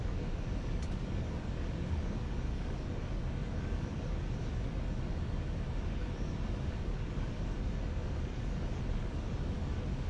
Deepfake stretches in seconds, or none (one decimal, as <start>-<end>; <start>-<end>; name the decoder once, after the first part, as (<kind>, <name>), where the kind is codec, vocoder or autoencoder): 0.0-10.1 (codec, DAC)